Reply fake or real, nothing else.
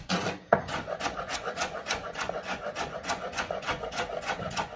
fake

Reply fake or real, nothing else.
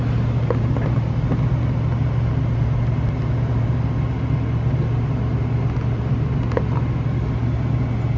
real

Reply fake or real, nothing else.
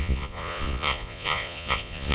fake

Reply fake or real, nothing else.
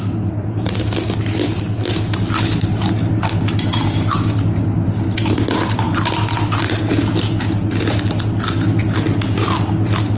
real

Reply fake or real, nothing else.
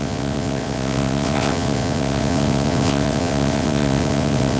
fake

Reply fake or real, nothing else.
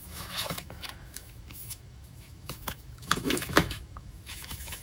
fake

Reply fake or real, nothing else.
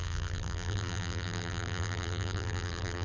fake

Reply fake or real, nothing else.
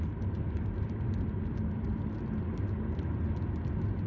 real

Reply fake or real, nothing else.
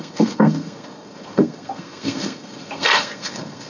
fake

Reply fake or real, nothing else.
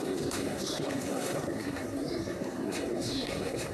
fake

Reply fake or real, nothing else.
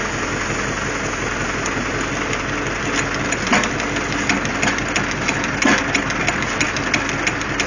real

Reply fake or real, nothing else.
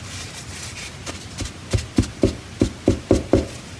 real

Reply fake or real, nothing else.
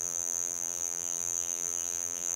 fake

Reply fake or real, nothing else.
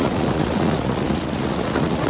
fake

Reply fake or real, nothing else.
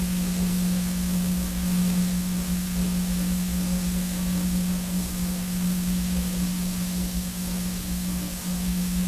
fake